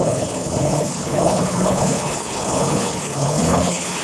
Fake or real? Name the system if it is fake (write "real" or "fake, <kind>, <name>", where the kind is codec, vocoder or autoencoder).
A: fake, codec, HILCodec